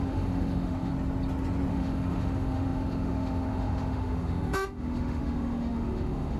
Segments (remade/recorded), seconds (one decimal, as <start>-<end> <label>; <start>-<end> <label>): 0.0-0.9 remade; 0.9-1.7 recorded; 1.7-6.4 remade